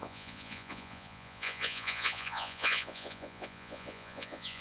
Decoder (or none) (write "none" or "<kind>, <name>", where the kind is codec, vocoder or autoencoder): vocoder, Vocos